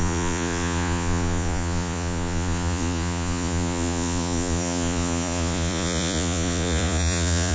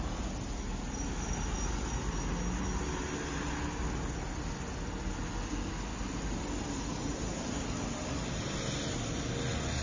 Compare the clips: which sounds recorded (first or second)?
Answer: second